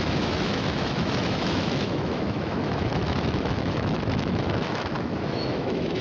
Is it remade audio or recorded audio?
remade